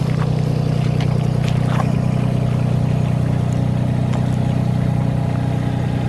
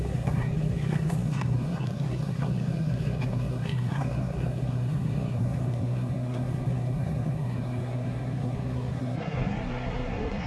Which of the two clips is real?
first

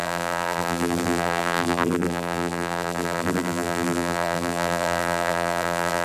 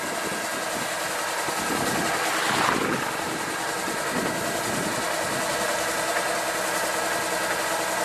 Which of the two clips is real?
second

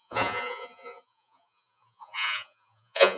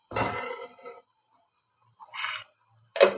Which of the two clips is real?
second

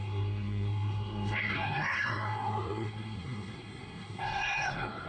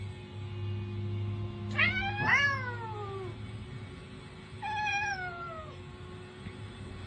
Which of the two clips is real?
second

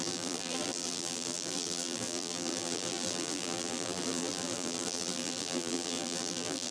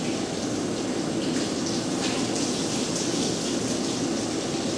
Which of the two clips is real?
second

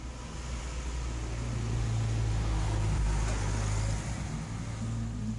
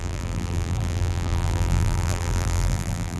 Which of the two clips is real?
first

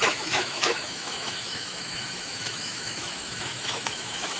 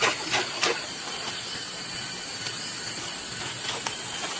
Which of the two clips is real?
second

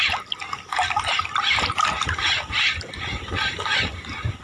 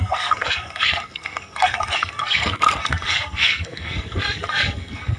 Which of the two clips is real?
first